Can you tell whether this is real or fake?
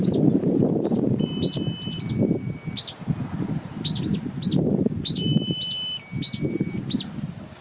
real